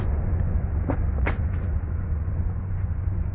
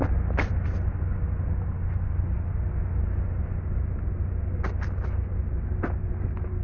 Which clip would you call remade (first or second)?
first